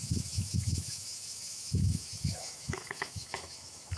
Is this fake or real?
fake